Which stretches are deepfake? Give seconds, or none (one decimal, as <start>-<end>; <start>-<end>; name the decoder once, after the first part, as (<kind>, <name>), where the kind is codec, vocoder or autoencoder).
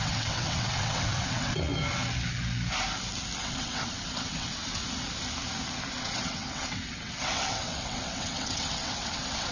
0.0-1.7 (vocoder, WaveNeXt); 3.4-4.8; 6.0-9.5